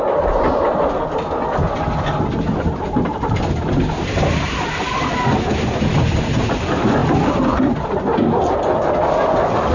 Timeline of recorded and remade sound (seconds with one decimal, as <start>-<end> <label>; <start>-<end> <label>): 0.0-9.7 recorded